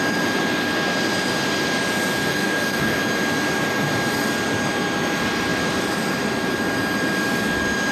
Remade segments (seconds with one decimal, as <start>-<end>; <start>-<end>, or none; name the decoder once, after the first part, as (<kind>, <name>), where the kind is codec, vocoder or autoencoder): 2.3-3.0 (codec, DAC)